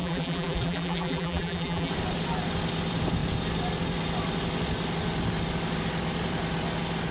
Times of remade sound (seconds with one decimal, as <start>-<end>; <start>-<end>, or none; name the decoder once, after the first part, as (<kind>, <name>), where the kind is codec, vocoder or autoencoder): 0.0-1.9 (vocoder, BigVGAN v2)